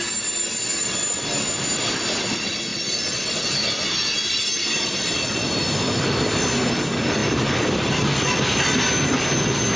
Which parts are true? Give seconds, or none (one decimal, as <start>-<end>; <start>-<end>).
0.0-9.8